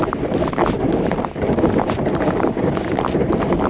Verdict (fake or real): real